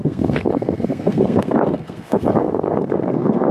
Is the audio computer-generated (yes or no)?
yes